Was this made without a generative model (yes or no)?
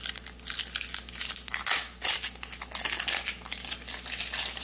yes